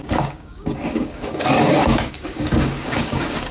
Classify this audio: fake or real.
fake